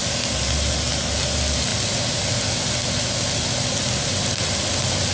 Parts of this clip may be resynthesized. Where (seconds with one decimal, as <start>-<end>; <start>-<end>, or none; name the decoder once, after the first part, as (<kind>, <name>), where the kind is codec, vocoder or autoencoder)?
none